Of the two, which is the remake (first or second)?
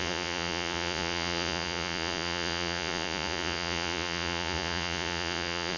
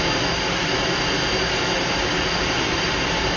first